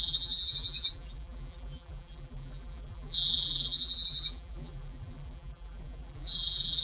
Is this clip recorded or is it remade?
remade